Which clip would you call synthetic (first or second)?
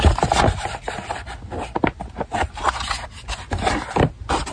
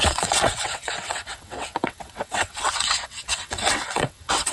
second